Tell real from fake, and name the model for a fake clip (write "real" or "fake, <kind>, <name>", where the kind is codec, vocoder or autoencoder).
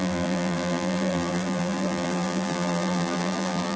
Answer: fake, vocoder, BigVGAN v2